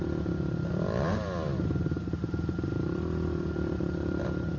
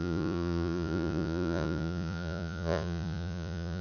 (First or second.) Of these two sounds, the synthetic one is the second